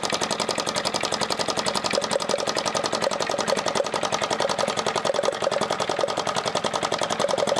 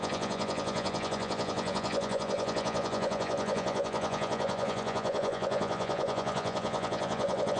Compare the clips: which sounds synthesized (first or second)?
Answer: second